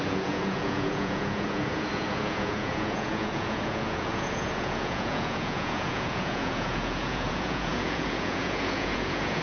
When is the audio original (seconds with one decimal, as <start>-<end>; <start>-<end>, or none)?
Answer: none